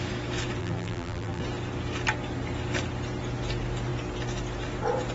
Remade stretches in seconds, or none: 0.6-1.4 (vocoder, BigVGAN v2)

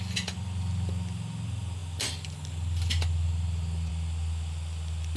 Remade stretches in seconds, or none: none

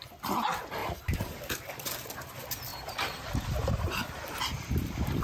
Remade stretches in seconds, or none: 0.8-1.4 (vocoder, BigVGAN v2); 2.7-4.4

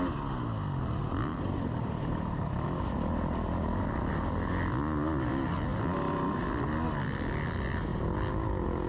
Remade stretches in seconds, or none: 1.3-5.3 (vocoder, BigVGAN v2); 5.7-6.4; 7.9-8.9

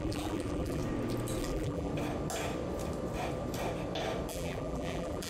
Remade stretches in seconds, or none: 0.0-0.8 (vocoder, BigVGAN v2); 1.4-1.9; 4.3-5.3

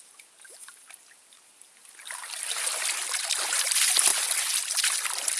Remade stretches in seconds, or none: 1.8-2.9 (vocoder, BigVGAN v2)

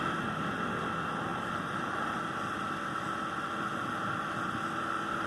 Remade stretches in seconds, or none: 1.3-2.2 (vocoder, BigVGAN v2)